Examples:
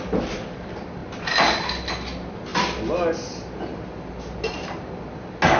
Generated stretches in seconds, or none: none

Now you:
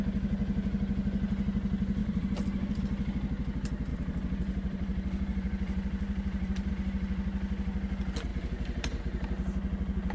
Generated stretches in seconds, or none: 2.0-2.8 (vocoder, BigVGAN v2); 3.9-6.7; 8.3-9.0

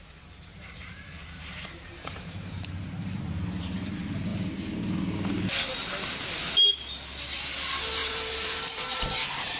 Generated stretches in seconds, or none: 0.5-3.2 (vocoder, BigVGAN v2); 8.0-9.0